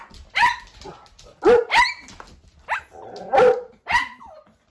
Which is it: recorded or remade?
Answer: recorded